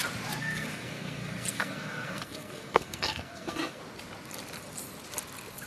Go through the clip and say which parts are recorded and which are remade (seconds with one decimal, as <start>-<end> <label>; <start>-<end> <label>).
0.0-0.4 recorded; 0.4-3.8 remade; 3.8-5.7 recorded